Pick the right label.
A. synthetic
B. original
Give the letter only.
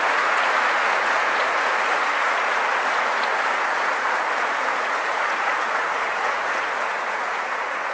A